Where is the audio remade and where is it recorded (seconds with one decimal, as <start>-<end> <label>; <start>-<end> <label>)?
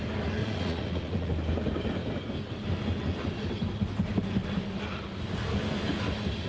0.0-0.4 recorded; 0.4-1.3 remade; 1.3-6.5 recorded